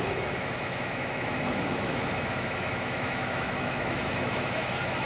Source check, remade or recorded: remade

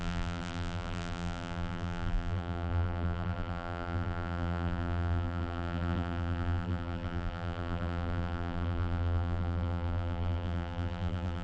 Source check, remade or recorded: remade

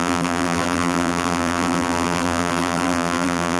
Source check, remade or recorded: remade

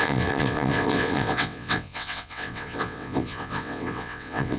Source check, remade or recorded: remade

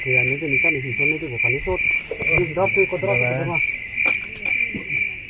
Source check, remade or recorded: recorded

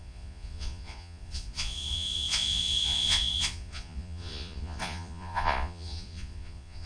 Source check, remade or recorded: remade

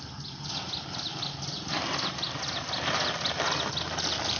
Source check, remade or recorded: recorded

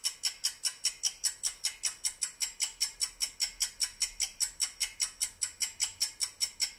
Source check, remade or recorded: recorded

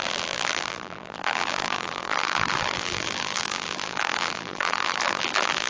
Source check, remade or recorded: remade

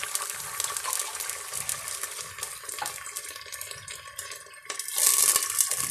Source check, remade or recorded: recorded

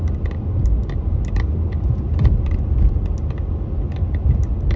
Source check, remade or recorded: recorded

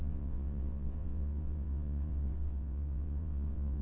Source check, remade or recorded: remade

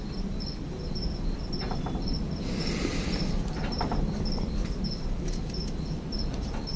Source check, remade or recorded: remade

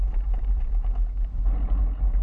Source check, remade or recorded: recorded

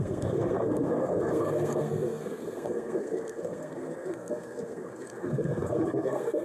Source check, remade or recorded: remade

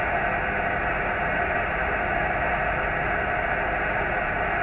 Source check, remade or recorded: recorded